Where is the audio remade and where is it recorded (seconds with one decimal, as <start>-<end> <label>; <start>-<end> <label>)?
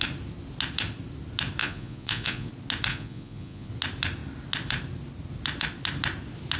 0.0-1.6 recorded; 1.6-2.5 remade; 2.5-2.9 recorded; 2.9-3.7 remade; 3.7-6.6 recorded